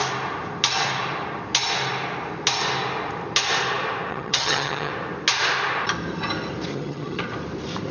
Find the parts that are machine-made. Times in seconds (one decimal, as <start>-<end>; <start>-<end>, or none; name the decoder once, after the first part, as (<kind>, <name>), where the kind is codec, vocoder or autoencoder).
4.1-4.9 (vocoder, HiFi-GAN); 6.7-7.2

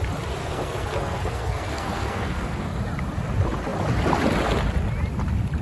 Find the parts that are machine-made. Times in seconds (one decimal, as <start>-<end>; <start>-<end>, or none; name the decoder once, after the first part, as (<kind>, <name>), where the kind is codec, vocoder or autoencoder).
0.4-2.8 (codec, SNAC)

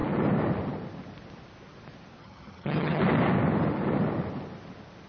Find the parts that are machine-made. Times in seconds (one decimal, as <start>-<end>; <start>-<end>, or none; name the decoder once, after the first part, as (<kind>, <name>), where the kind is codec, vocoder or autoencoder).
2.2-3.0 (vocoder, HiFi-GAN)

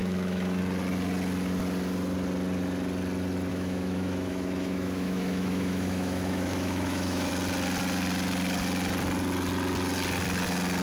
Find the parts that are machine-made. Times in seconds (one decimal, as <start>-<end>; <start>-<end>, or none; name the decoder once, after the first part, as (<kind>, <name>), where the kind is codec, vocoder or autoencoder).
0.0-0.6 (autoencoder, DAC-VAE); 3.5-7.3

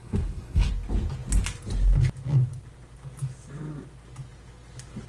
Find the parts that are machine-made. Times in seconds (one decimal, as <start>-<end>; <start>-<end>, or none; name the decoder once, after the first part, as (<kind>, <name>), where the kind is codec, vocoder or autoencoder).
0.0-0.7 (codec, SNAC)

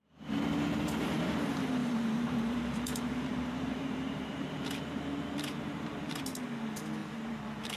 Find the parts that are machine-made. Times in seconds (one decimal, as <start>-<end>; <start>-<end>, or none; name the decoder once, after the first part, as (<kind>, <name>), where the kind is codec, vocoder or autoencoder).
1.8-6.2 (vocoder, BigVGAN v2); 7.0-7.8

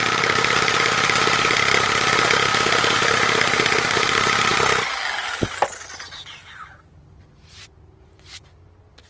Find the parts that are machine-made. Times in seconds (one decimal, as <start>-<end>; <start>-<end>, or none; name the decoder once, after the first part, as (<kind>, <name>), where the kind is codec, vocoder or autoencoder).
none